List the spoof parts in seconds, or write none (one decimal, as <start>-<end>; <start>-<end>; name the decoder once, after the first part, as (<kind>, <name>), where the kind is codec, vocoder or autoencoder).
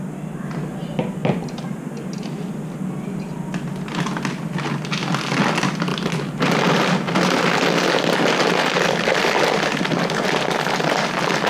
1.2-2.5 (vocoder, BigVGAN v2)